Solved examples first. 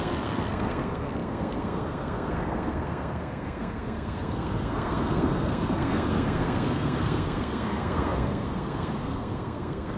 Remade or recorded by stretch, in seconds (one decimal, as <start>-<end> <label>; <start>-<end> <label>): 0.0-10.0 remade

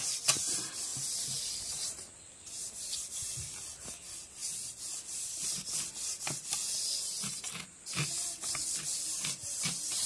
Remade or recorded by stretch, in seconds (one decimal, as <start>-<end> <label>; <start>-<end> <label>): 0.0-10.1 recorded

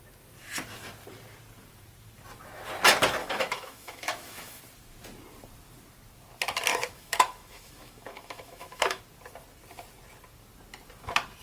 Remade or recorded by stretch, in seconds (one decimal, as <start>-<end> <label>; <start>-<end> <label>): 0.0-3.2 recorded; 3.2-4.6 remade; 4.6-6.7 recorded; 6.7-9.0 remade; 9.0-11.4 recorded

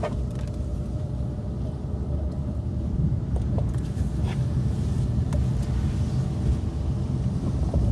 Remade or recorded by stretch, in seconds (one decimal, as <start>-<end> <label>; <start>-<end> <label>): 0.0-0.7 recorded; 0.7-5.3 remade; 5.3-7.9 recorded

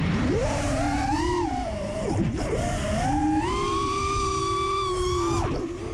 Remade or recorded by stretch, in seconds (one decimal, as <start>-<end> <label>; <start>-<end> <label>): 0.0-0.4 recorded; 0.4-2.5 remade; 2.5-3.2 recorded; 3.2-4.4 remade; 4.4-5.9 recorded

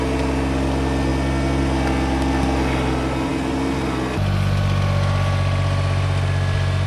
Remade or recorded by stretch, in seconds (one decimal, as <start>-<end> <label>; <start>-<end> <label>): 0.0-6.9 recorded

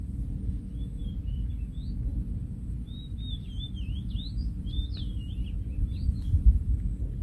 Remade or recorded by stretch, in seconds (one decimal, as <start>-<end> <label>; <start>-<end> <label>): 0.0-1.0 recorded; 1.0-1.5 remade; 1.5-2.1 recorded; 2.1-6.4 remade; 6.4-7.2 recorded